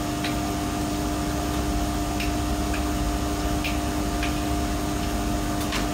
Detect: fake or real real